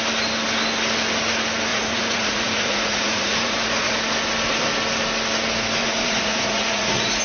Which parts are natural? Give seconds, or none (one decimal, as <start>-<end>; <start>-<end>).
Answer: 0.0-1.7; 3.9-5.8